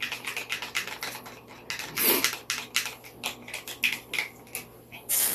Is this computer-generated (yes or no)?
no